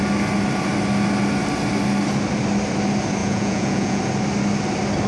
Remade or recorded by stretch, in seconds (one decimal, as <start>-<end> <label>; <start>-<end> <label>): 0.0-3.2 recorded; 3.2-4.0 remade; 4.0-5.1 recorded